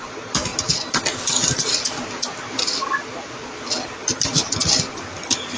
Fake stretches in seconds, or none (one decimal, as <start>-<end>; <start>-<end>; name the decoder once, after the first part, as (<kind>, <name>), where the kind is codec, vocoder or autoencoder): none